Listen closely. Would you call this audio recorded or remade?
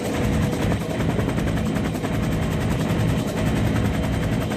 recorded